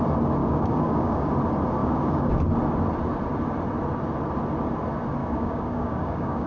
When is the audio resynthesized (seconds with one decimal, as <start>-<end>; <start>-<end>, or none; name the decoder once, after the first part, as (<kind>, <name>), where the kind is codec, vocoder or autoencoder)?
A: 0.4-1.3 (codec, DAC); 1.8-2.3; 5.2-6.5